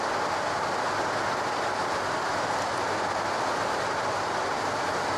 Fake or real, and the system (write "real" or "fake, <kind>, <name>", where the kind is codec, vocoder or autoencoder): real